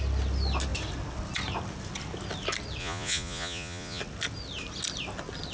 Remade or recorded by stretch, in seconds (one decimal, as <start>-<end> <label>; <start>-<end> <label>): 0.0-2.8 recorded; 2.8-4.0 remade; 4.0-5.5 recorded